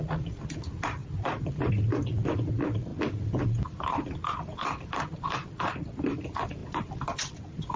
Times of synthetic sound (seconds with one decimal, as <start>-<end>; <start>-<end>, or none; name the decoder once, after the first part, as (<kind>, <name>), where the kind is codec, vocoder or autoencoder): none